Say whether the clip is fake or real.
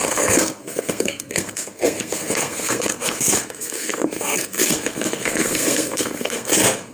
fake